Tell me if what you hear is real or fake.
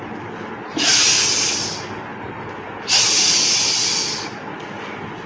real